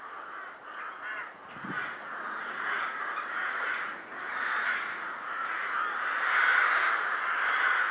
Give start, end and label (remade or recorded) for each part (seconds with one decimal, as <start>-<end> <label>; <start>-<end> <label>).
0.0-0.9 recorded; 0.9-5.6 remade; 5.6-7.9 recorded

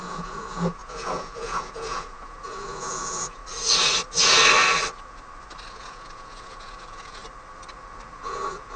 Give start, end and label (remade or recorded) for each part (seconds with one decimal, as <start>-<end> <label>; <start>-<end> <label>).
0.0-3.4 remade; 3.4-5.7 recorded; 5.7-7.2 remade; 7.2-8.1 recorded; 8.1-8.8 remade

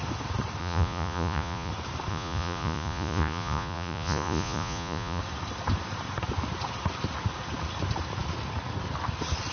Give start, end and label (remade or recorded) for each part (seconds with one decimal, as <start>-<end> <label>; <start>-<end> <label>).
0.0-0.6 recorded; 0.6-1.7 remade; 1.7-2.1 recorded; 2.1-5.2 remade; 5.2-9.5 recorded

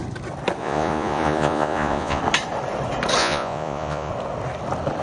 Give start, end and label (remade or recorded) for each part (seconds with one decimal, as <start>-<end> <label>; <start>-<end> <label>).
0.0-0.6 recorded; 0.6-2.2 remade; 2.2-3.2 recorded; 3.2-4.1 remade; 4.1-5.0 recorded

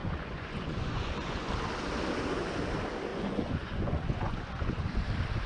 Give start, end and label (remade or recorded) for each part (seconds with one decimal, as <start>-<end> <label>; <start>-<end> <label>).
0.0-1.5 remade; 1.5-3.1 recorded; 3.1-5.0 remade; 5.0-5.5 recorded

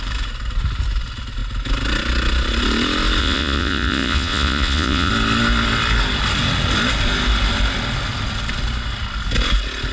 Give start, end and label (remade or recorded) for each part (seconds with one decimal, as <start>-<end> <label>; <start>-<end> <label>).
0.0-3.2 recorded; 3.2-5.1 remade; 5.1-9.9 recorded

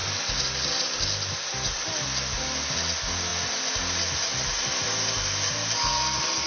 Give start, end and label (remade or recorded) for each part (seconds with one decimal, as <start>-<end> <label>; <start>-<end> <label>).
0.0-6.5 recorded